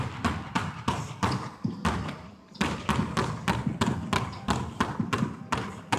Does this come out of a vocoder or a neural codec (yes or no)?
no